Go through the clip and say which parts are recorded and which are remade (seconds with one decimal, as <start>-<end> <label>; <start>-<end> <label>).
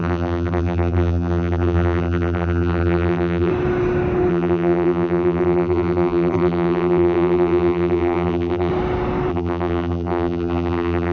0.0-3.5 remade; 3.5-4.3 recorded; 4.3-8.7 remade; 8.7-9.3 recorded; 9.3-11.1 remade